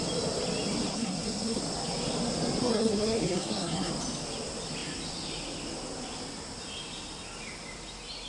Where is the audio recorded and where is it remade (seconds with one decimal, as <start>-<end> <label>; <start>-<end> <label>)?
0.0-0.9 recorded; 0.9-1.6 remade; 1.6-2.6 recorded; 2.6-3.9 remade; 3.9-8.3 recorded